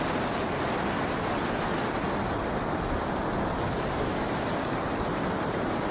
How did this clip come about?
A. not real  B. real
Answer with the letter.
B